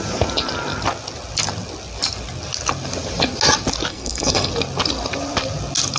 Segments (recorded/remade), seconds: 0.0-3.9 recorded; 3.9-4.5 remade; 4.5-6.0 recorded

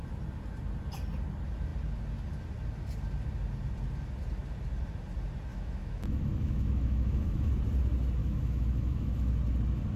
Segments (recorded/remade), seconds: 0.0-5.5 recorded; 5.5-7.5 remade; 7.5-8.2 recorded; 8.2-9.3 remade; 9.3-10.0 recorded

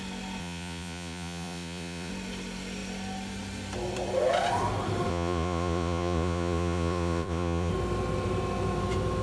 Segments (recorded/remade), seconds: 0.0-0.4 recorded; 0.4-2.1 remade; 2.1-5.1 recorded; 5.1-7.7 remade; 7.7-9.2 recorded

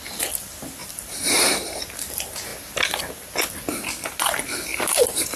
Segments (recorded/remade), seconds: 0.0-0.8 recorded; 0.8-1.8 remade; 1.8-4.7 recorded; 4.7-5.4 remade

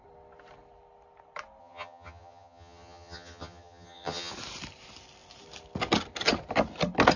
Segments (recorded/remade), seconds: 0.0-1.6 recorded; 1.6-4.3 remade; 4.3-7.2 recorded

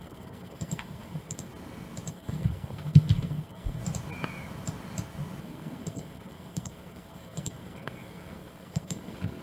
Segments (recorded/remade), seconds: 0.0-1.5 remade; 1.5-2.1 recorded; 2.1-3.8 remade; 3.8-5.4 recorded; 5.4-9.4 remade

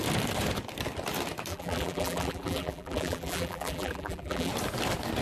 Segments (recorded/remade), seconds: 0.0-1.5 recorded; 1.5-4.5 remade; 4.5-5.2 recorded

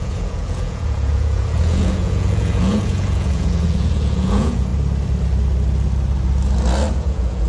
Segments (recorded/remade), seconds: 0.0-4.7 remade; 4.7-6.9 recorded; 6.9-7.5 remade